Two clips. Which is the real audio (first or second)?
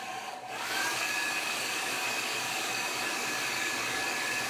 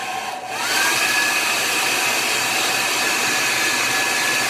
second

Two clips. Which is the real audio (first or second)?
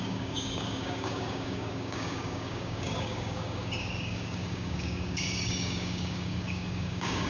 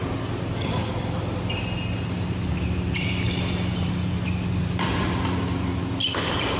second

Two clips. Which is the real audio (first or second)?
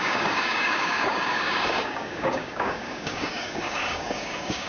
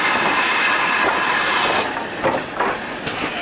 second